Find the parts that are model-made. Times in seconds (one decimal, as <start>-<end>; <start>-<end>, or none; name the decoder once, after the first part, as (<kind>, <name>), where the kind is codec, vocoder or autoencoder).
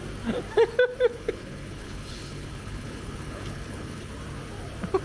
1.1-4.1 (codec, HILCodec)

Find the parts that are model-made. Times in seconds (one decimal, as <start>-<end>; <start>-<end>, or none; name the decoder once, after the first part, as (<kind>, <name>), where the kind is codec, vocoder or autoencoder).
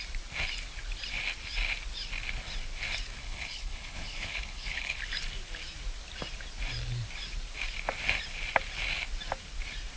3.2-5.0 (codec, HILCodec)